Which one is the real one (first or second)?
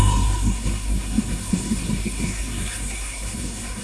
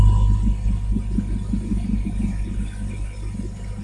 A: second